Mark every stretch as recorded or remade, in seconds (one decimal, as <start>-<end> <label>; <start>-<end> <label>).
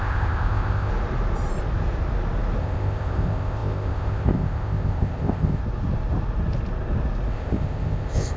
0.0-0.9 remade; 0.9-2.6 recorded; 2.6-5.6 remade; 5.6-7.3 recorded; 7.3-8.4 remade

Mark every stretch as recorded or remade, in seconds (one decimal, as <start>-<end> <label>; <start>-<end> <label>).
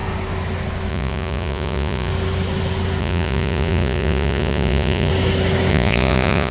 0.0-0.9 recorded; 0.9-2.1 remade; 2.1-3.0 recorded; 3.0-5.1 remade; 5.1-5.7 recorded; 5.7-6.5 remade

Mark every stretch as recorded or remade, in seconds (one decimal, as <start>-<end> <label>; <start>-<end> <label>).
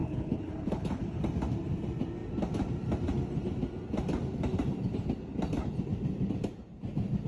0.0-1.2 remade; 1.2-7.3 recorded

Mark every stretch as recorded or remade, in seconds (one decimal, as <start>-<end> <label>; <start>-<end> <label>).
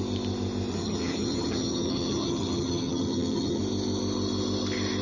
0.0-0.7 recorded; 0.7-3.6 remade; 3.6-5.0 recorded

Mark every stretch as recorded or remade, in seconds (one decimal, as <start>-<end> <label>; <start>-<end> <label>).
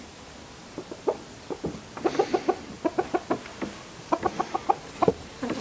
0.0-5.0 recorded; 5.0-5.6 remade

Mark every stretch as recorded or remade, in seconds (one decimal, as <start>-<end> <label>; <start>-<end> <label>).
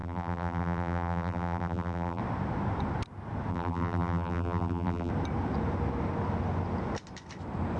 0.0-2.2 remade; 2.2-3.5 recorded; 3.5-5.1 remade; 5.1-7.8 recorded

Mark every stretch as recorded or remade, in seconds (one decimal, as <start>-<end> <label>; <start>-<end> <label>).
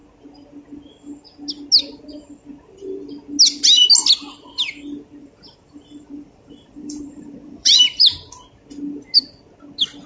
0.0-5.2 recorded; 5.2-8.3 remade; 8.3-10.1 recorded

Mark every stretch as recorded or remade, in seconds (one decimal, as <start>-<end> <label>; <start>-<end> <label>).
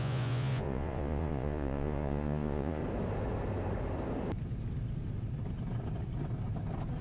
0.0-2.8 remade; 2.8-7.0 recorded